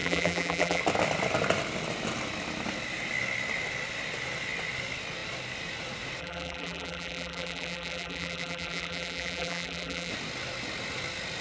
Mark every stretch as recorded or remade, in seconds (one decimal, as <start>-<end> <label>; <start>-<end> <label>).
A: 0.0-0.8 remade; 0.8-6.2 recorded; 6.2-10.1 remade; 10.1-11.4 recorded